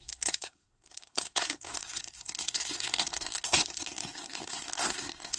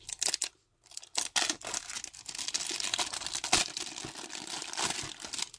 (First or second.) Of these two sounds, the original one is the second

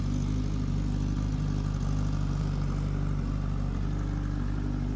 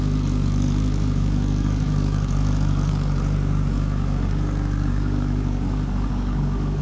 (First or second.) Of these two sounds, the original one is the first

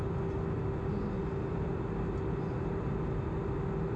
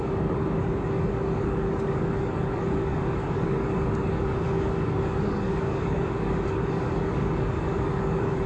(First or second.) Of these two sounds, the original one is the first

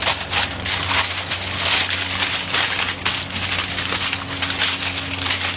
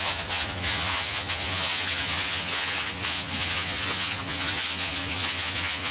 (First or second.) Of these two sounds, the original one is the first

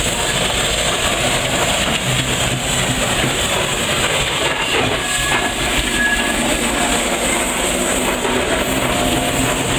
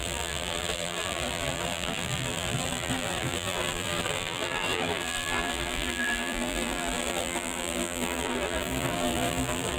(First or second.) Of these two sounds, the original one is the first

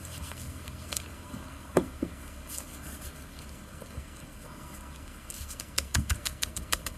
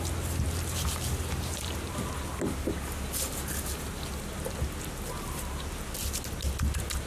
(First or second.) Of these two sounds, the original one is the second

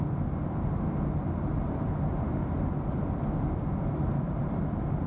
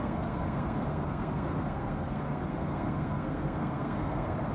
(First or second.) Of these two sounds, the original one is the first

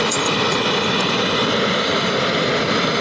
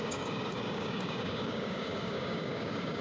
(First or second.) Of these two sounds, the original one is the first